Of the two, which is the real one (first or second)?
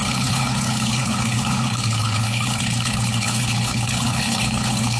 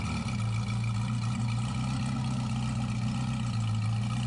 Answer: second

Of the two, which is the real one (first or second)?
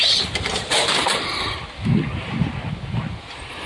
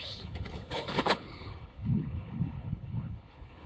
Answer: first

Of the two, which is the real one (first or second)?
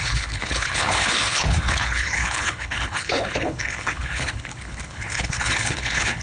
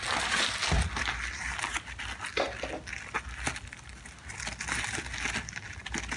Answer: second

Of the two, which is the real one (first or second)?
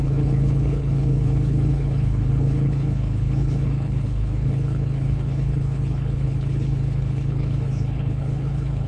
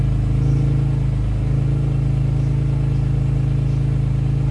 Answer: second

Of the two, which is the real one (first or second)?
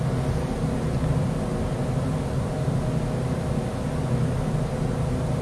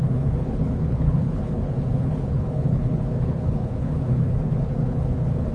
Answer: first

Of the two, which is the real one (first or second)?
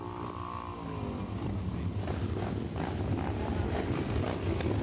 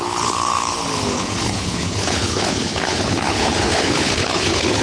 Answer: first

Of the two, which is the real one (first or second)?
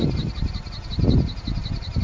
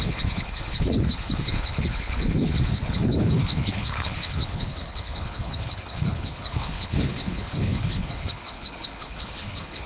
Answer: first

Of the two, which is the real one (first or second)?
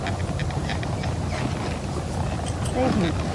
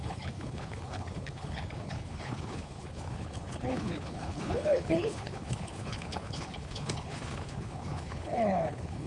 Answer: first